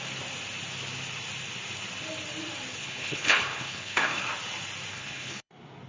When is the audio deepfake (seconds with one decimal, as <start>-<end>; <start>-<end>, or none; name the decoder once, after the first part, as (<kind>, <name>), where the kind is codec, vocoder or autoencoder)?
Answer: 2.8-4.2 (codec, HILCodec); 4.9-5.5